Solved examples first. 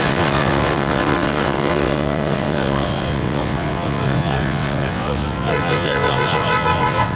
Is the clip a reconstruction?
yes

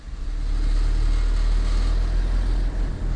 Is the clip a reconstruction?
no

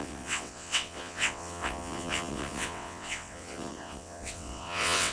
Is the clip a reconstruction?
yes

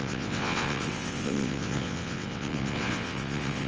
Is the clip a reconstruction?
yes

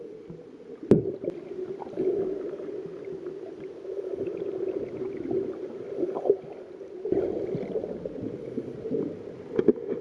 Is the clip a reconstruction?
no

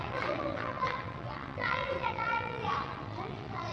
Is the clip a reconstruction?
yes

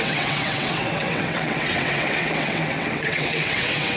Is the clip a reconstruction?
yes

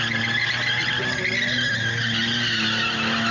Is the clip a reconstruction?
no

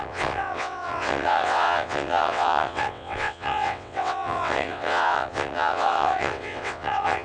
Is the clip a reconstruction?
yes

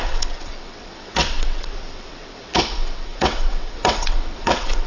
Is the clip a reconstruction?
yes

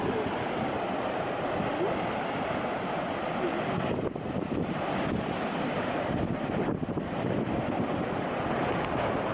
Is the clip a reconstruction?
no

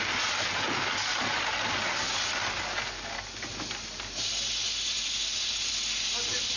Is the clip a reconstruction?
no